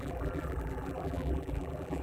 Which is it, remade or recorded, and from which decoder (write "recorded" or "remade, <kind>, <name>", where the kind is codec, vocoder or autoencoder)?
remade, vocoder, BigVGAN v2